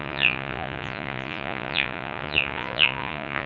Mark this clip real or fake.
fake